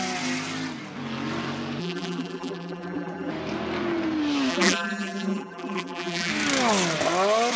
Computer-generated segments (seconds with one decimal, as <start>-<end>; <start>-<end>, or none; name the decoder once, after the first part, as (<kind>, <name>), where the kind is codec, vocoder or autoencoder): 1.8-3.3 (vocoder, BigVGAN v2); 4.5-6.3